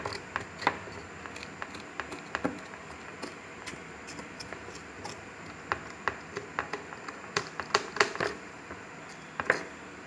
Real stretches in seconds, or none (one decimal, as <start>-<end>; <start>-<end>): 0.0-10.1